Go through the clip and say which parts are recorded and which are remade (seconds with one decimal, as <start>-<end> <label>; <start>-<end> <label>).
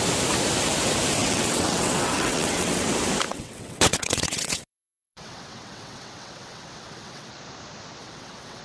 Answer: 0.0-1.2 recorded; 1.2-2.8 remade; 2.8-3.3 recorded; 3.3-7.3 remade; 7.3-8.0 recorded; 8.0-8.6 remade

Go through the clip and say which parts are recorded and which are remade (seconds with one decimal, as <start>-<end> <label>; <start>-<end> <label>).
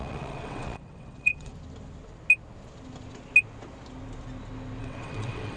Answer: 0.0-1.5 remade; 1.5-4.8 recorded; 4.8-5.6 remade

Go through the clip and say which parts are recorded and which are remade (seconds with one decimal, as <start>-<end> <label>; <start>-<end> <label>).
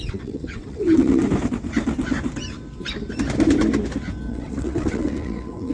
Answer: 0.0-1.2 remade; 1.2-4.3 recorded; 4.3-5.7 remade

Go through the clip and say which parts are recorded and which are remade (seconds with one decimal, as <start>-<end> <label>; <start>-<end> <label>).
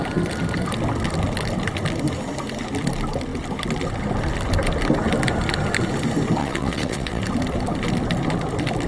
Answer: 0.0-6.4 recorded; 6.4-7.2 remade; 7.2-8.9 recorded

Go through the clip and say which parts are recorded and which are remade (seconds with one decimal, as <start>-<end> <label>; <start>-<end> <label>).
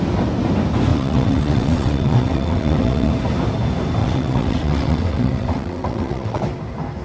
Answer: 0.0-0.9 recorded; 0.9-3.1 remade; 3.1-4.0 recorded; 4.0-6.4 remade; 6.4-7.0 recorded